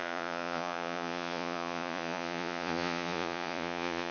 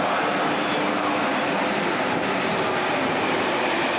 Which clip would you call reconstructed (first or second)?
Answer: first